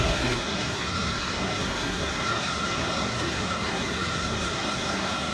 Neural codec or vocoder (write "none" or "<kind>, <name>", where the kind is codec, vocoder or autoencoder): codec, SNAC